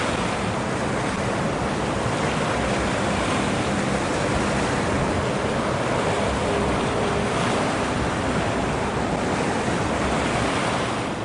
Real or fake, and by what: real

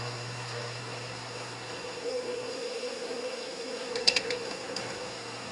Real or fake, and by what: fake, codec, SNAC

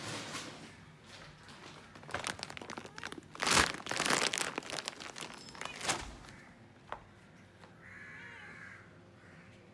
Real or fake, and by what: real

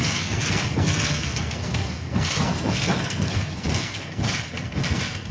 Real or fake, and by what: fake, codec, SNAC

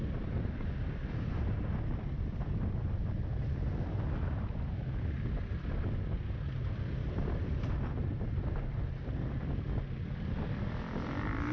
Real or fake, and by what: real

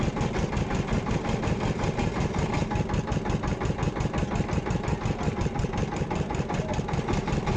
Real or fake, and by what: real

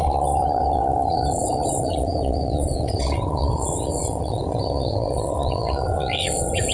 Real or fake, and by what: fake, vocoder, WaveNeXt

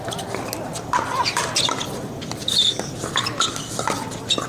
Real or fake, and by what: real